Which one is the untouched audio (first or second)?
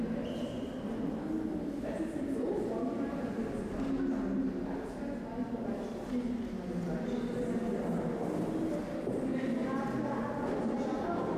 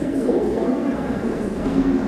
first